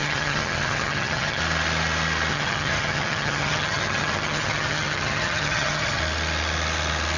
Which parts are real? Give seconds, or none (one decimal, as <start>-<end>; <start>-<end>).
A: 1.4-2.3; 6.0-7.2